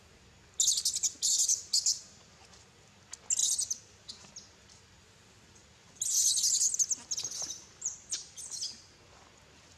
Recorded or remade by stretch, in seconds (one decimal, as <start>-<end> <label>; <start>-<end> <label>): 0.0-3.4 recorded; 3.4-4.3 remade; 4.3-9.8 recorded